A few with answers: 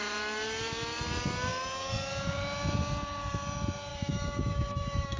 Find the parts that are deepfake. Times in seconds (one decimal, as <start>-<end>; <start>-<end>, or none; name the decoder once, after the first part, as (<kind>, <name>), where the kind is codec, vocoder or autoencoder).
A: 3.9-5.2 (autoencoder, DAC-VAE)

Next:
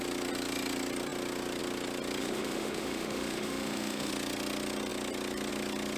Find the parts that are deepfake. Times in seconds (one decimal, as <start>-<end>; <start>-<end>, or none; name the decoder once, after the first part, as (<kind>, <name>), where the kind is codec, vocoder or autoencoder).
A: 2.2-4.1 (autoencoder, DAC-VAE)

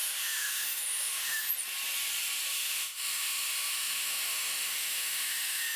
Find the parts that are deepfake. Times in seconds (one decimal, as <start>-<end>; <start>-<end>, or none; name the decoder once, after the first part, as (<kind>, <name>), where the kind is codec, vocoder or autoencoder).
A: 0.0-1.5 (autoencoder, DAC-VAE); 2.5-5.8